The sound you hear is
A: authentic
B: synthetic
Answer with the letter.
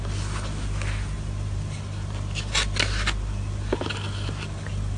A